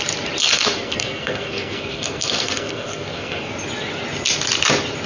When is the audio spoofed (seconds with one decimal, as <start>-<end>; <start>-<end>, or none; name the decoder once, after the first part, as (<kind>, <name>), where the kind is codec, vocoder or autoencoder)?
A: 0.4-3.5 (codec, SNAC)